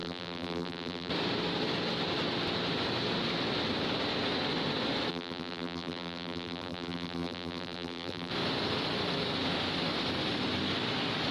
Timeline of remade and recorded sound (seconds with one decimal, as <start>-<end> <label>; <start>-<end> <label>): 0.0-1.1 remade; 1.1-5.1 recorded; 5.1-8.3 remade; 8.3-11.3 recorded